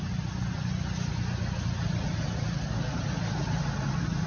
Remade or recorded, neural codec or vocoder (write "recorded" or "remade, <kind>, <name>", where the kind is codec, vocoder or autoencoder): recorded